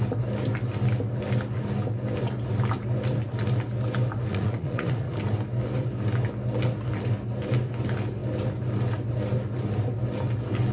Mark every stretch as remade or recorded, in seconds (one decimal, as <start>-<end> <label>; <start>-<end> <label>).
0.0-4.3 recorded; 4.3-5.2 remade; 5.2-10.7 recorded